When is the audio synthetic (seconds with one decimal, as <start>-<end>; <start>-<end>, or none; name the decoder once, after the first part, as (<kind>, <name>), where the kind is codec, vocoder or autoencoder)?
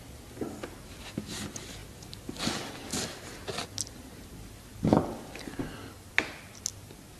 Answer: none